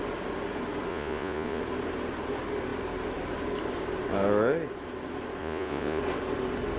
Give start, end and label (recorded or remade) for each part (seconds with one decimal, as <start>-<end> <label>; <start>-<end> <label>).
0.0-0.9 recorded; 0.9-1.6 remade; 1.6-5.4 recorded; 5.4-6.0 remade; 6.0-6.8 recorded